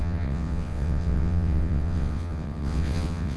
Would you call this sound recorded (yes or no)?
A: no